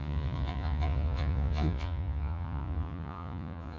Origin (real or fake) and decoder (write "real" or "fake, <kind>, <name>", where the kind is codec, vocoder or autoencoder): fake, vocoder, Vocos